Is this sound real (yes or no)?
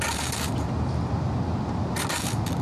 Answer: yes